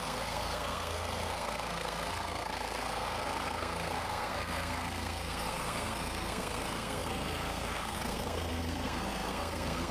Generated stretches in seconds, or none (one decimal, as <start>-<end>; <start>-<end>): 0.0-9.9